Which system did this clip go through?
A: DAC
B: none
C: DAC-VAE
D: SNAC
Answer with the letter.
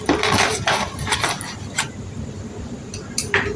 B